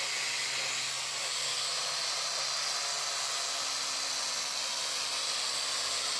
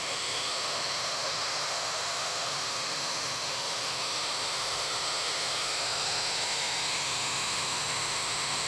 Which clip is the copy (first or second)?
second